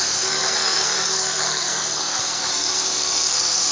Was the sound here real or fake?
fake